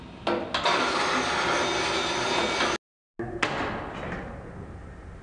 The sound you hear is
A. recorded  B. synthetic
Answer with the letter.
A